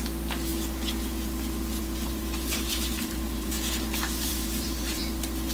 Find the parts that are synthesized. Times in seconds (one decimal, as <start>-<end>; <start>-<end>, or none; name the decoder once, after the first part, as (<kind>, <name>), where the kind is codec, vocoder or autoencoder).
1.8-3.5 (vocoder, BigVGAN v2); 4.3-5.0